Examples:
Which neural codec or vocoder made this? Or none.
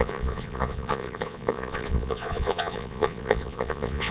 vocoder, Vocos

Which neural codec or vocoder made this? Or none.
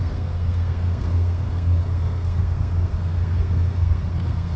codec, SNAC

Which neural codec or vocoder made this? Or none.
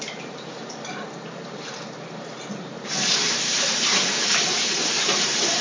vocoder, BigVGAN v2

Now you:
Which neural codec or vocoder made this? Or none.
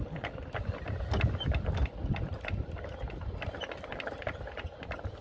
none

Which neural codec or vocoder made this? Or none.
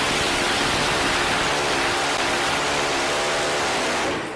none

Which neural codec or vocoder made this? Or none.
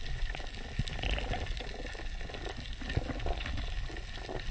none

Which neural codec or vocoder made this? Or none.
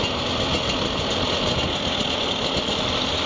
none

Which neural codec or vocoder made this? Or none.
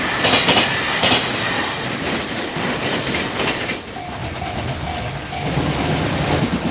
none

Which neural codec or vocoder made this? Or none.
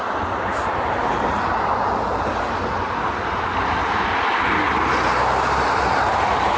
none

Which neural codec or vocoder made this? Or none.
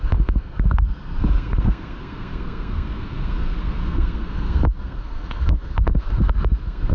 codec, SNAC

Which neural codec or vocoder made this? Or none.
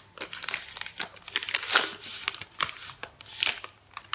none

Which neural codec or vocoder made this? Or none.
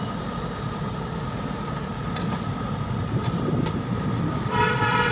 vocoder, BigVGAN v2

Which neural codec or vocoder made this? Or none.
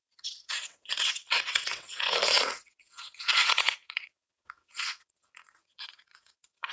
vocoder, WaveNeXt